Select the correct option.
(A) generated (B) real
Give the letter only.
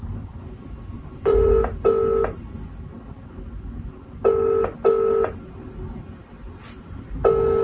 B